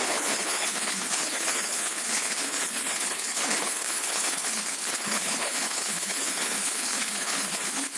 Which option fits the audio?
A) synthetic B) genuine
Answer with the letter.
A